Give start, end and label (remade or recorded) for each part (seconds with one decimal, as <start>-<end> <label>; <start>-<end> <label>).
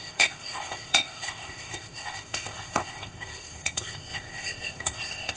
0.0-5.4 remade